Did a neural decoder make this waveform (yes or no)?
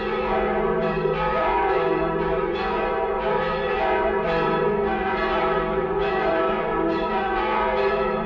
yes